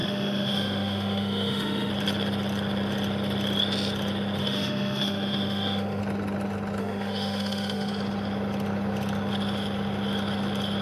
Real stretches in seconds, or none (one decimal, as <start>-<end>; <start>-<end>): 1.9-4.4; 6.0-6.8; 7.9-10.8